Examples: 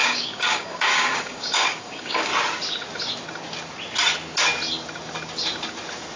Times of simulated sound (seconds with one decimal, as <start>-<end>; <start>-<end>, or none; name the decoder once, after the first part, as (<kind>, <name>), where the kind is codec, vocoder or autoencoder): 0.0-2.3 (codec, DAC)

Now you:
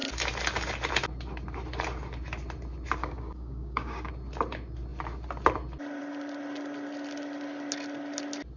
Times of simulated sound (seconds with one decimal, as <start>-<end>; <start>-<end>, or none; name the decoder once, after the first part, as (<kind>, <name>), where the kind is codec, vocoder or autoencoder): 3.0-4.1 (codec, DAC)

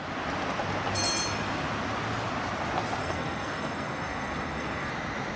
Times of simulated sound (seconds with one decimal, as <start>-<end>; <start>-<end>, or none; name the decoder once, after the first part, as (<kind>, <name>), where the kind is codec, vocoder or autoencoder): 3.0-4.9 (codec, SNAC)

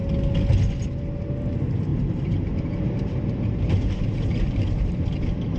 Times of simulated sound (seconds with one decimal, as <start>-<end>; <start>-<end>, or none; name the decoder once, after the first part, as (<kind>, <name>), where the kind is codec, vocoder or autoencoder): 1.9-5.0 (vocoder, BigVGAN v2)

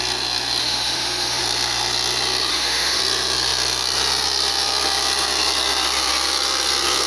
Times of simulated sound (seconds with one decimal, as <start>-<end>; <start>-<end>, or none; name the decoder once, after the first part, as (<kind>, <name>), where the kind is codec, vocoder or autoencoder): 0.6-1.4 (autoencoder, DAC-VAE); 2.5-3.0

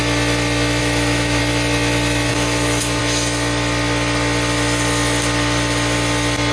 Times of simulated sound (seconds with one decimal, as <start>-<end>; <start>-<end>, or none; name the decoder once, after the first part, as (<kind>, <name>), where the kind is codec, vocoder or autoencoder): 0.8-1.4 (autoencoder, DAC-VAE); 2.3-3.0

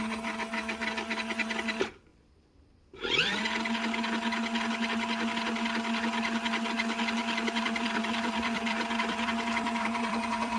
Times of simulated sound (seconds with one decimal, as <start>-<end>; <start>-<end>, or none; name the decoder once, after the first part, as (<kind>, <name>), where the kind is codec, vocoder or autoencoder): 2.1-3.4 (vocoder, BigVGAN v2); 7.2-10.6

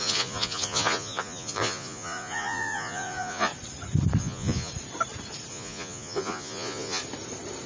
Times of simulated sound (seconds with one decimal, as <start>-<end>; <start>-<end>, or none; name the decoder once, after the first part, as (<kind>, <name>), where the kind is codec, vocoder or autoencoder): 0.0-3.5 (vocoder, Vocos); 4.2-4.7; 5.5-7.0